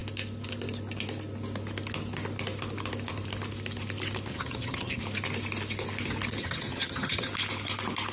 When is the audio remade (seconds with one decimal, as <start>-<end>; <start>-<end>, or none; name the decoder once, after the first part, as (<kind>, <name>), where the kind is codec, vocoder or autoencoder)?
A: 4.3-5.0 (vocoder, HiFi-GAN); 6.4-7.3